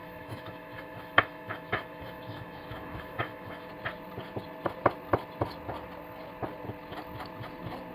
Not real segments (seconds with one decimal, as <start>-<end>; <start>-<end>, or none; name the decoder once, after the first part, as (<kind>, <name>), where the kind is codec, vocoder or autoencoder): 0.0-3.7 (autoencoder, DAC-VAE)